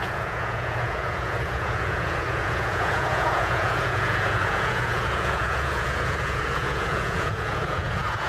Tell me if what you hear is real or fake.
fake